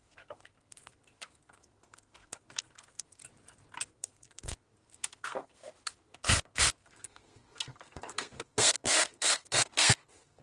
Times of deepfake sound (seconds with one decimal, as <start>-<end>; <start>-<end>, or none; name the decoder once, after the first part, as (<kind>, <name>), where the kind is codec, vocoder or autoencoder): 0.0-3.2 (codec, SNAC); 3.9-10.4